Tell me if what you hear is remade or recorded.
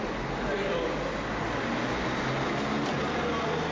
recorded